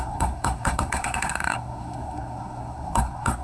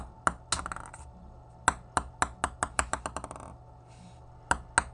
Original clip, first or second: second